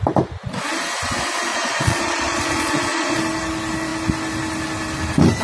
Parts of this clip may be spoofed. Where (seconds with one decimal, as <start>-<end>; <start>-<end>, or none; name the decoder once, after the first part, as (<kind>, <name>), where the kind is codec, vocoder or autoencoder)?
1.5-3.2 (vocoder, Vocos)